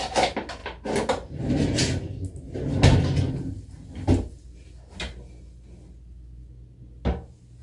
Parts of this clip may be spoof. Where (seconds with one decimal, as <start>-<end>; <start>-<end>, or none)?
none